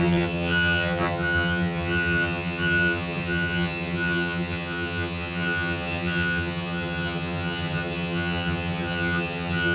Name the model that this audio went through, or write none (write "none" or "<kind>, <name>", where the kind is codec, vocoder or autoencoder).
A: vocoder, HiFi-GAN